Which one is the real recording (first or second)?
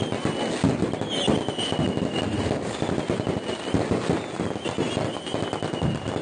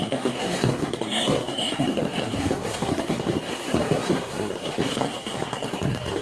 first